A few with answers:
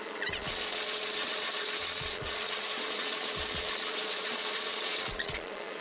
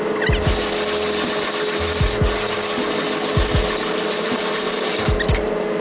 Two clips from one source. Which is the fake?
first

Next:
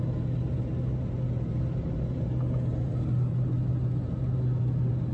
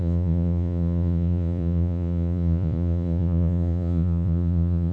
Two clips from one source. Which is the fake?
second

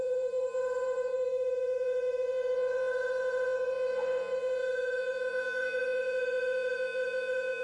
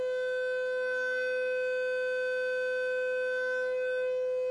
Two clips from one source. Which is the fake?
first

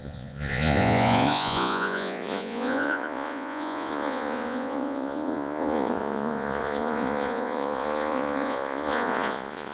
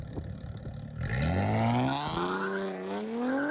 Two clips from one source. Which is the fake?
first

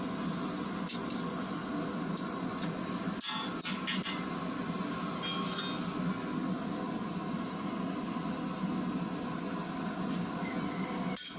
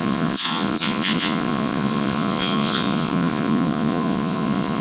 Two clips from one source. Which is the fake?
second